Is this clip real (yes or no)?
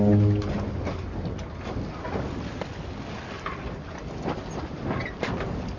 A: yes